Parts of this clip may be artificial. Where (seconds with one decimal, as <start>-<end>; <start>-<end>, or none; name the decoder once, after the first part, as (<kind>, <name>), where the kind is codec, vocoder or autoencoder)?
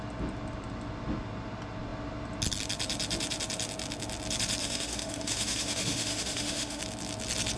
4.6-6.8 (autoencoder, DAC-VAE)